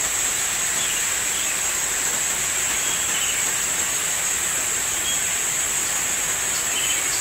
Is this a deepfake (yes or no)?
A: yes